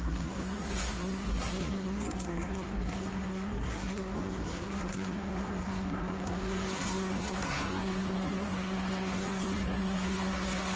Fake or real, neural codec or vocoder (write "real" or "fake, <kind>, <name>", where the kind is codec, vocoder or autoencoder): fake, codec, SNAC